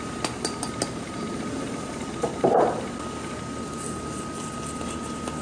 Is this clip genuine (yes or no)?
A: yes